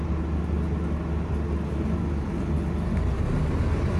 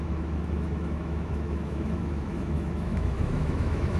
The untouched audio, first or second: first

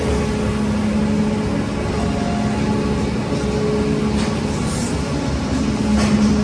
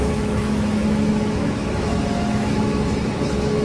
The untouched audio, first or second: first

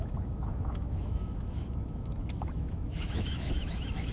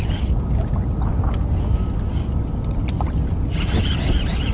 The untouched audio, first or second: second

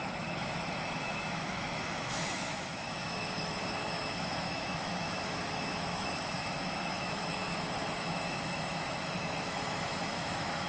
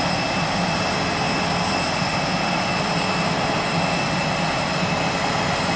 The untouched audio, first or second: second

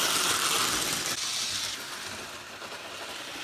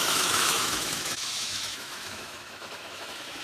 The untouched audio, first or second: first